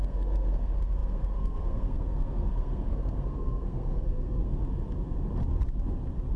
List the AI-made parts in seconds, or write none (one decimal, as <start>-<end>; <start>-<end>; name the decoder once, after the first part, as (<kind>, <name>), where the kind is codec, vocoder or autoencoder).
0.0-4.6 (codec, SNAC)